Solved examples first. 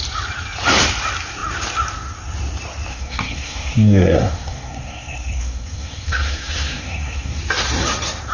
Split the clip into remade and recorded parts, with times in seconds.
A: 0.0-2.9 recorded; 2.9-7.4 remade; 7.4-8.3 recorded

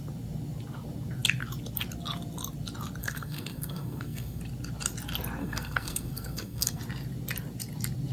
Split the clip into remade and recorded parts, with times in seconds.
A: 0.0-3.0 recorded; 3.0-4.4 remade; 4.4-5.4 recorded; 5.4-6.8 remade; 6.8-8.1 recorded

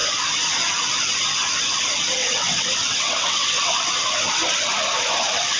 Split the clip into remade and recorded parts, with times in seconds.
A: 0.0-2.2 recorded; 2.2-3.9 remade; 3.9-5.6 recorded

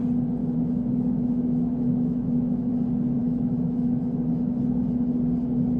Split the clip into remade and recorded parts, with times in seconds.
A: 0.0-0.4 recorded; 0.4-2.7 remade; 2.7-3.2 recorded; 3.2-4.0 remade; 4.0-5.8 recorded

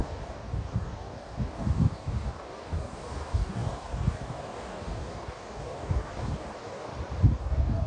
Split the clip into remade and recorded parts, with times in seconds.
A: 0.0-6.9 remade; 6.9-7.4 recorded; 7.4-7.9 remade

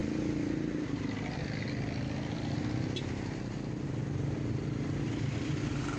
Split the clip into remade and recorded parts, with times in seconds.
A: 0.0-6.0 recorded